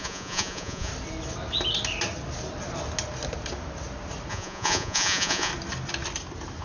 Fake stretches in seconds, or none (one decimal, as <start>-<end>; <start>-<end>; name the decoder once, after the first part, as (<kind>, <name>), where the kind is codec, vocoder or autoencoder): 0.0-0.9 (vocoder, Vocos); 4.3-5.5